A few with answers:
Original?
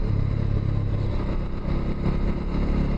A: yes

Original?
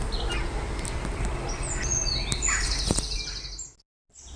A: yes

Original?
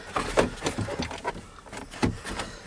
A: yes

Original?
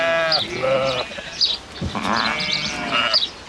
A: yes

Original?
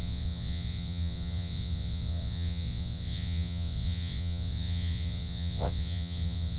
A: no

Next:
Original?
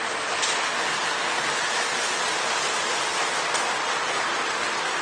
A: yes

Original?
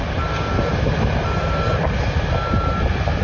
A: yes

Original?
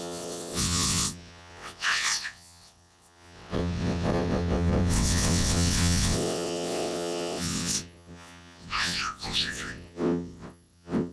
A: no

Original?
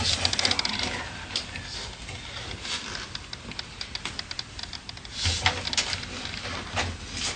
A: yes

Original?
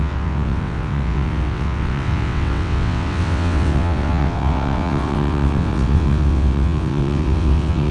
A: no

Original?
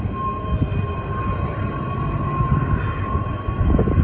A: yes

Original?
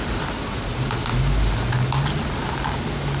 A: yes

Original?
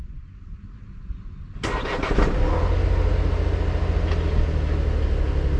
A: yes